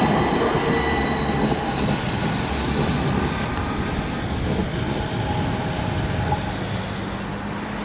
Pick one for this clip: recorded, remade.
recorded